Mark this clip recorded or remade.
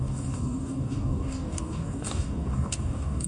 remade